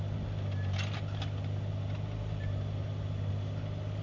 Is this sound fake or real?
real